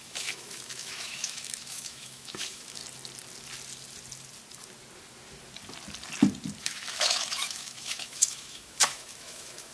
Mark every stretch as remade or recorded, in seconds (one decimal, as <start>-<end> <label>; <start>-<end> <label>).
0.0-2.8 remade; 2.8-6.6 recorded; 6.6-9.7 remade